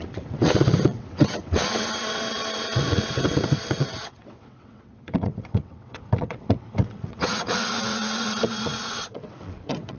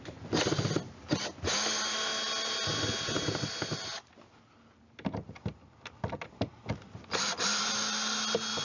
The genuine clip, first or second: second